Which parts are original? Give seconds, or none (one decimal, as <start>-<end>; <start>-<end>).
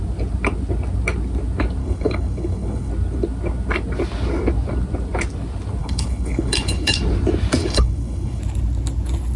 0.0-1.8; 2.9-5.8; 7.0-7.6; 8.4-9.4